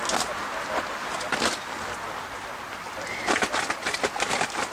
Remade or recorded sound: recorded